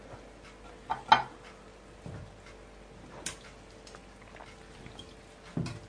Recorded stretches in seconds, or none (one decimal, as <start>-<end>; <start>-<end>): 0.0-5.9